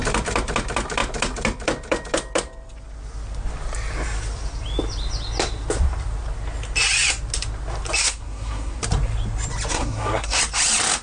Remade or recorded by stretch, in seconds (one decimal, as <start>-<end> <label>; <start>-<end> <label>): 0.0-8.0 recorded; 8.0-8.8 remade; 8.8-9.7 recorded; 9.7-10.4 remade; 10.4-11.0 recorded